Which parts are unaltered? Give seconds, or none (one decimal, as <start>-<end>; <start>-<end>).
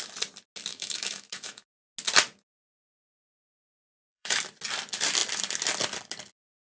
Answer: 0.0-0.7; 1.8-3.7; 4.4-6.6